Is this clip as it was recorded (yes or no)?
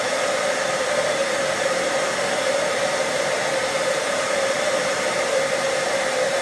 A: no